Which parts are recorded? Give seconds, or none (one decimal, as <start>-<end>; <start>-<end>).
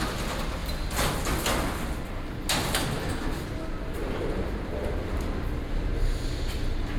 0.0-7.0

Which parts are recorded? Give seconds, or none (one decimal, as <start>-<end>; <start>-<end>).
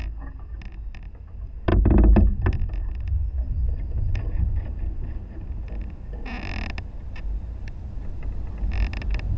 0.0-9.4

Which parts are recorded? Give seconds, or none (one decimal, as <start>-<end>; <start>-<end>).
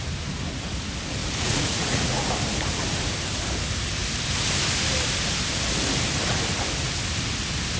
0.0-1.2; 2.2-7.8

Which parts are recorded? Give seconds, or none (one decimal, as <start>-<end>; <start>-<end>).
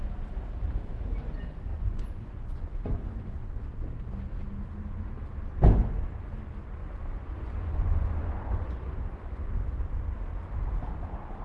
0.0-1.7; 3.5-6.8; 9.5-11.4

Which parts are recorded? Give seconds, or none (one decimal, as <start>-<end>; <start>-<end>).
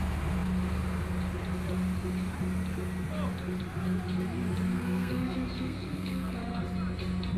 0.0-4.7; 6.6-7.4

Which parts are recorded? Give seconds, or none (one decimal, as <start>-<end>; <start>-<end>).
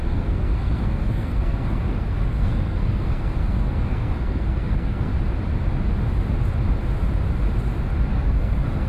5.1-8.1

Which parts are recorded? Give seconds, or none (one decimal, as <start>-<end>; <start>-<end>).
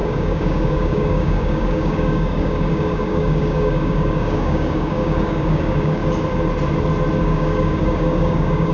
6.0-7.2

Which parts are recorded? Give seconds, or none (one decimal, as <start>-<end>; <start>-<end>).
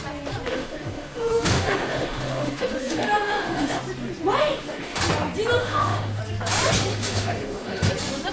0.0-0.5; 3.8-4.4; 5.0-5.6; 6.2-6.9; 7.9-8.3